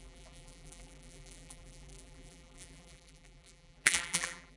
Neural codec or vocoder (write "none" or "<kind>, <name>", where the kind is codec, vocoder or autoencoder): vocoder, BigVGAN v2